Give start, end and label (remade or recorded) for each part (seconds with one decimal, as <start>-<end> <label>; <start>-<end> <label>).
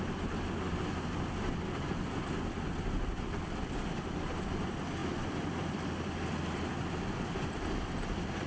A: 0.0-8.5 recorded